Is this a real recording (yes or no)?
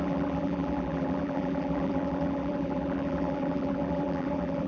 no